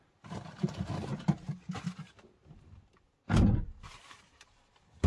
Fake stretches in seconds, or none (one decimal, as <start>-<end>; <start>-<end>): none